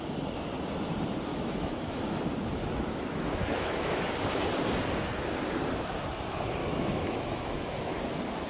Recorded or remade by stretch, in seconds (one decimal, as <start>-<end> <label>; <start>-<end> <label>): 0.0-1.3 recorded; 1.3-2.2 remade; 2.2-2.6 recorded; 2.6-4.1 remade; 4.1-6.6 recorded; 6.6-8.0 remade; 8.0-8.5 recorded